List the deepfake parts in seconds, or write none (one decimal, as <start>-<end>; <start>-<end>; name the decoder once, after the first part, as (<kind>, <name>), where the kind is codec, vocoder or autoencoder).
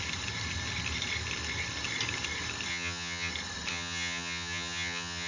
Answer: 2.7-3.3 (vocoder, HiFi-GAN); 3.7-5.3